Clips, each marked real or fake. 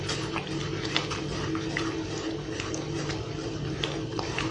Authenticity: real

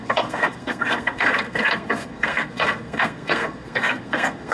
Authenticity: fake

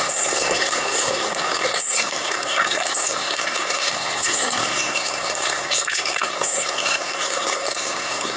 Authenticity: fake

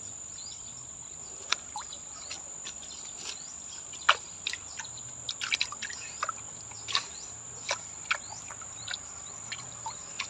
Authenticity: real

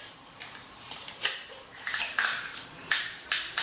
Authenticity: fake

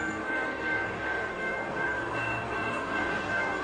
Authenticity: fake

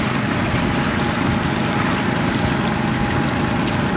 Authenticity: real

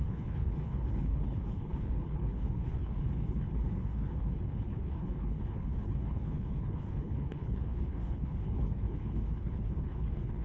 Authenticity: fake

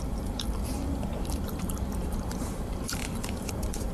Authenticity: fake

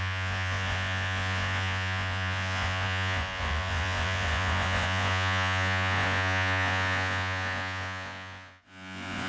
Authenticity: fake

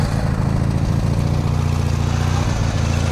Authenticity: real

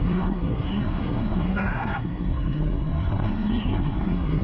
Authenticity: fake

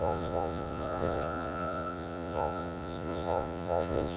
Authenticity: fake